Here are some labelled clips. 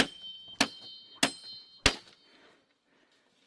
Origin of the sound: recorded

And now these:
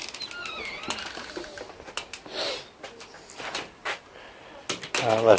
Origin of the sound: recorded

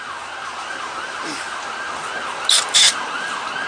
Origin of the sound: recorded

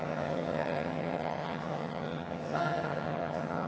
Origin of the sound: remade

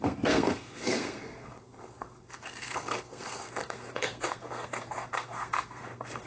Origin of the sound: remade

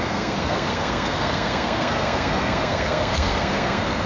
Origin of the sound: remade